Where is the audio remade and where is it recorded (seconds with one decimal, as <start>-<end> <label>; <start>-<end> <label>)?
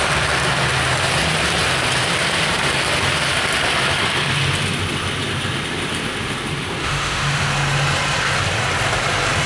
0.0-6.8 recorded; 6.8-7.5 remade; 7.5-9.5 recorded